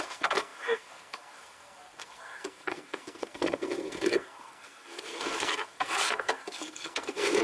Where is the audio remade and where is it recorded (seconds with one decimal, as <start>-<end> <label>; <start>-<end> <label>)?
0.0-7.4 remade